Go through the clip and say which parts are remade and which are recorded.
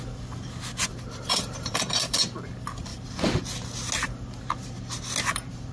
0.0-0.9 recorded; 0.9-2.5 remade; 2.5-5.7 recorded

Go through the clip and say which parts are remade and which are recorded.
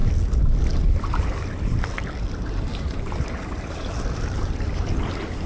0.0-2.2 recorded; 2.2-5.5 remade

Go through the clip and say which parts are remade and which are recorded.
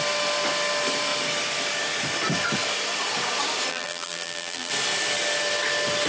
0.0-3.7 recorded; 3.7-4.7 remade; 4.7-6.1 recorded